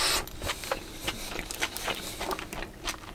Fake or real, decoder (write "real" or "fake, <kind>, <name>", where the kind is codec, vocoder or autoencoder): real